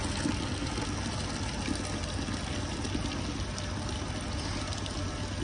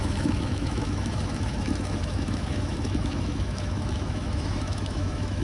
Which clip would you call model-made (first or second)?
second